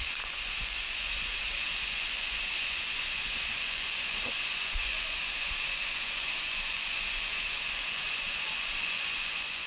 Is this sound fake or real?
fake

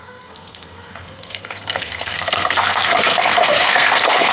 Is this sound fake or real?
fake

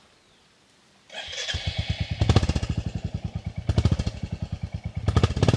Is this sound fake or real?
real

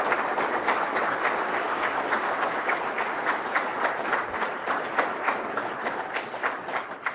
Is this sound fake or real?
real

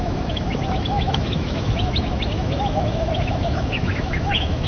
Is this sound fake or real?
fake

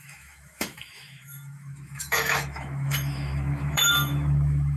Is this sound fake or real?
fake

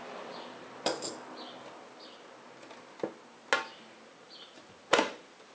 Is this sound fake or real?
real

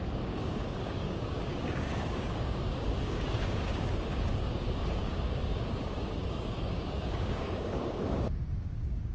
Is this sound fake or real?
fake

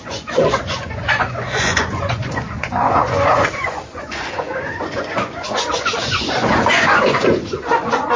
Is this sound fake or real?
fake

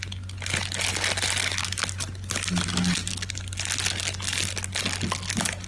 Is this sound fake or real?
real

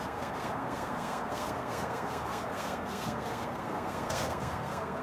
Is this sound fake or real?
fake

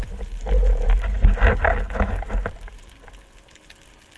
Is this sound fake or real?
real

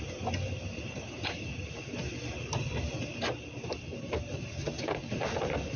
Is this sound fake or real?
real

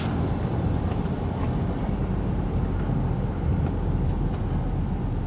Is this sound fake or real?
real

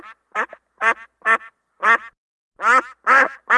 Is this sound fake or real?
real